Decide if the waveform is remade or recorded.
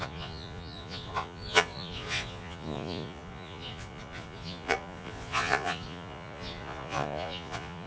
remade